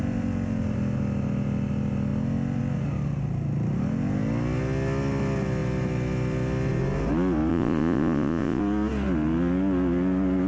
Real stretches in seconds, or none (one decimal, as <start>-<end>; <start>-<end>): 0.0-7.5; 8.6-10.5